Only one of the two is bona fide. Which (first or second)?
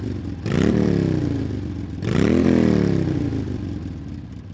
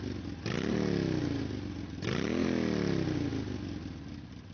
second